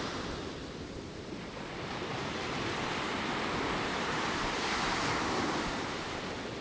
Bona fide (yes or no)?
no